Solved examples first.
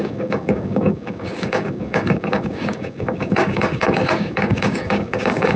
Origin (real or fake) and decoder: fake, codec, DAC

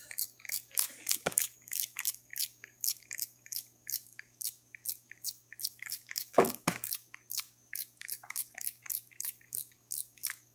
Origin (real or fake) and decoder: fake, codec, DAC